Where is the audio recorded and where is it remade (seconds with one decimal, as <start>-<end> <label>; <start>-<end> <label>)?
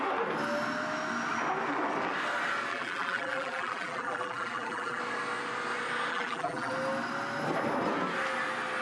0.0-2.7 recorded; 2.7-5.0 remade; 5.0-6.1 recorded; 6.1-6.7 remade; 6.7-8.8 recorded